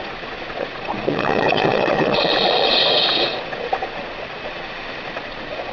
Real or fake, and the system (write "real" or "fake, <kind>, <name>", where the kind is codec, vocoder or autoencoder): fake, vocoder, Vocos